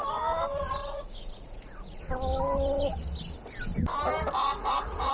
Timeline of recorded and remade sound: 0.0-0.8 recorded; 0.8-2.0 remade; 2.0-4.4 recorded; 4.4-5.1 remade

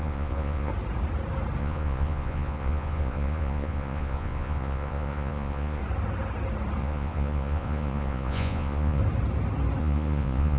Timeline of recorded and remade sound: 0.0-0.7 remade; 0.7-1.6 recorded; 1.6-5.8 remade; 5.8-6.8 recorded; 6.8-9.0 remade; 9.0-9.8 recorded; 9.8-10.6 remade

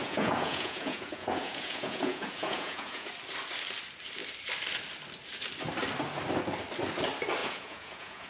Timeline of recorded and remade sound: 0.0-3.1 remade; 3.1-7.4 recorded; 7.4-8.3 remade

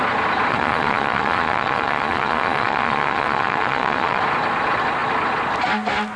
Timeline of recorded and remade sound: 0.0-0.5 recorded; 0.5-4.2 remade; 4.2-6.2 recorded

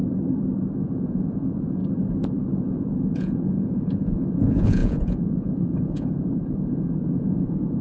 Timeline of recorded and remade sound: 0.0-0.8 recorded; 0.8-1.8 remade; 1.8-2.4 recorded; 2.4-7.8 remade